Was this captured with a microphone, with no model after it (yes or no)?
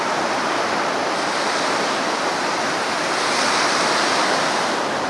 yes